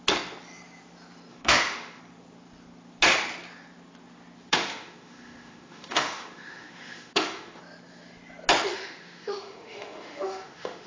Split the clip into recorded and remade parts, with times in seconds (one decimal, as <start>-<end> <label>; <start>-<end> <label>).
0.0-1.3 recorded; 1.3-2.0 remade; 2.0-4.5 recorded; 4.5-7.6 remade; 7.6-8.7 recorded; 8.7-10.9 remade